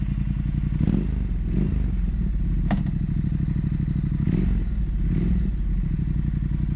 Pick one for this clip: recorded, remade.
recorded